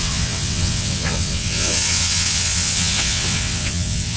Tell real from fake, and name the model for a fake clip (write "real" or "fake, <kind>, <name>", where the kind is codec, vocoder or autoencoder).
fake, vocoder, WaveNeXt